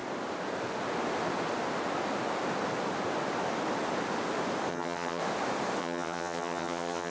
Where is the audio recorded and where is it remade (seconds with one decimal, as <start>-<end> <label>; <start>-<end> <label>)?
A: 0.0-4.7 recorded; 4.7-5.2 remade; 5.2-5.8 recorded; 5.8-7.1 remade